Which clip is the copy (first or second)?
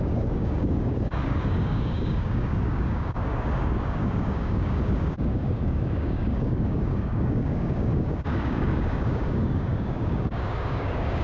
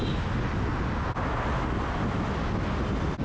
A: first